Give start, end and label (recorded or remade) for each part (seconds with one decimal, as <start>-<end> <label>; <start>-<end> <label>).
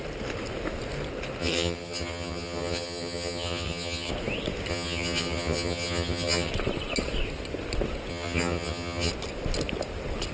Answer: 0.0-1.4 recorded; 1.4-4.1 remade; 4.1-4.7 recorded; 4.7-6.5 remade; 6.5-8.1 recorded; 8.1-9.1 remade; 9.1-10.3 recorded